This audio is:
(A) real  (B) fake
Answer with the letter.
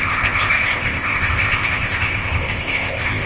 B